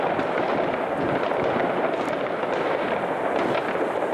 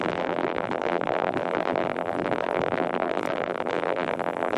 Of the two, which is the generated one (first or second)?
second